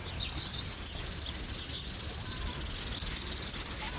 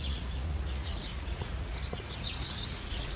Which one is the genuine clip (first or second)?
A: first